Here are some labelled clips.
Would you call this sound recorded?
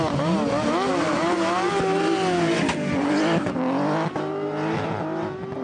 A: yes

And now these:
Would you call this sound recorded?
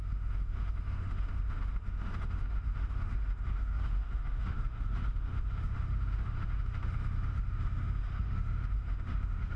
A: no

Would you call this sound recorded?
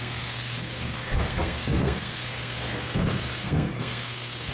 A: no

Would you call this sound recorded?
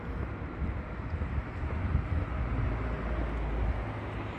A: yes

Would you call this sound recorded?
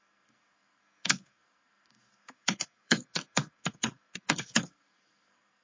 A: no